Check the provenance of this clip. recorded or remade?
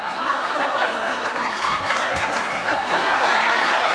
remade